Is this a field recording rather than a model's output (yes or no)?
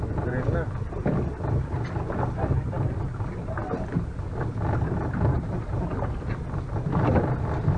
yes